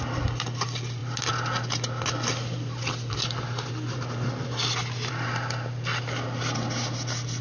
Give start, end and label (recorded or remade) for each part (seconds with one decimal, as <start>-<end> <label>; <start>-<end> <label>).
0.0-7.4 recorded